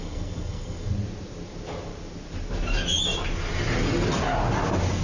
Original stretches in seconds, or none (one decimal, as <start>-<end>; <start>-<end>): 0.9-5.0